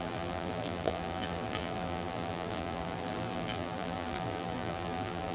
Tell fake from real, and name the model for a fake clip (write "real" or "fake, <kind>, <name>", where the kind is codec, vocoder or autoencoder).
fake, vocoder, BigVGAN v2